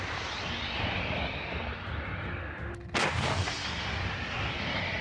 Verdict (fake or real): real